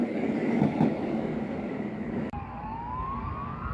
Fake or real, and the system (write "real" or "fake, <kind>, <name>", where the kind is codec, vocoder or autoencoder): fake, codec, DAC